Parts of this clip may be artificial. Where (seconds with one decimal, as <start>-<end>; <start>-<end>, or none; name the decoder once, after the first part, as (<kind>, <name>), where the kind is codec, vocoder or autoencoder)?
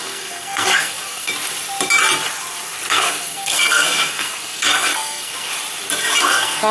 0.0-1.3 (codec, SNAC); 2.9-5.5; 6.2-6.7